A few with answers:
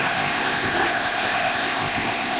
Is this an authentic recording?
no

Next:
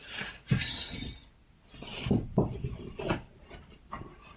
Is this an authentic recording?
yes